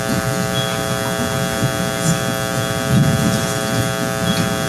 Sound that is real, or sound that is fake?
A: real